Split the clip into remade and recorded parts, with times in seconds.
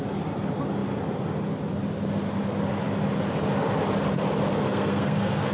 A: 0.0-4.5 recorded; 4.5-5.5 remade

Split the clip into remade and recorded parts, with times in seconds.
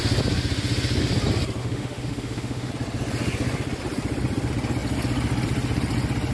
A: 0.0-1.6 recorded; 1.6-2.7 remade; 2.7-6.3 recorded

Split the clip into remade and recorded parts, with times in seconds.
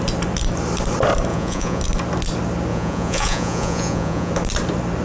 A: 0.0-1.3 recorded; 1.3-1.8 remade; 1.8-2.7 recorded; 2.7-4.3 remade; 4.3-5.0 recorded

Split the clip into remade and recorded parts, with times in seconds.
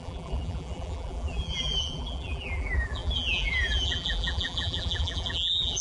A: 0.0-5.8 remade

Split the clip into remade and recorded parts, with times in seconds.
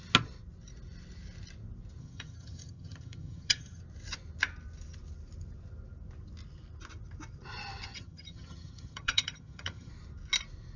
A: 0.0-2.0 recorded; 2.0-3.8 remade; 3.8-7.9 recorded; 7.9-9.9 remade; 9.9-10.8 recorded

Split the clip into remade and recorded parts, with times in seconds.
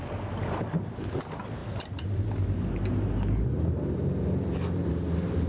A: 0.0-5.5 recorded